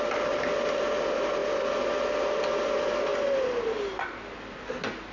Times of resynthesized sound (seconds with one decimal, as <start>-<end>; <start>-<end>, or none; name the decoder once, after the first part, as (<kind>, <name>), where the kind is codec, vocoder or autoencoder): 1.4-2.3 (vocoder, BigVGAN v2); 3.1-3.8